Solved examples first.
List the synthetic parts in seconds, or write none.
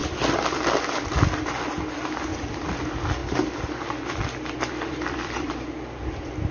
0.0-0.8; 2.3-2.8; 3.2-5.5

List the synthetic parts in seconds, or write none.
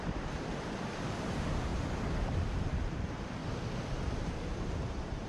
0.0-1.7; 2.2-3.4; 4.0-5.3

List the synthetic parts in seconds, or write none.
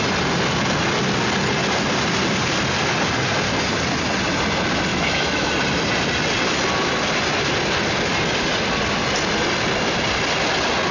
4.9-5.5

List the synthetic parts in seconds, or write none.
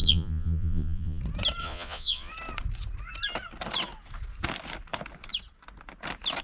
0.0-1.2; 1.6-2.3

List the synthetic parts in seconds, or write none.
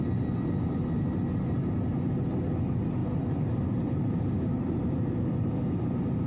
3.0-5.2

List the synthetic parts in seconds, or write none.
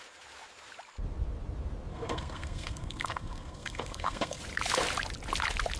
1.9-4.4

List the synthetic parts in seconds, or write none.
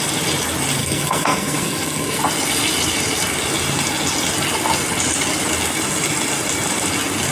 0.8-2.2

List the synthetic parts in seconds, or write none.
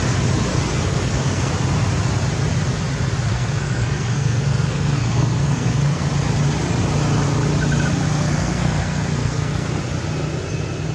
0.5-1.5; 3.3-6.1; 8.1-9.8